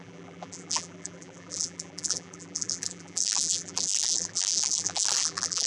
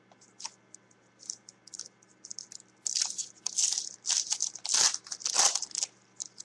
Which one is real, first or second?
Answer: second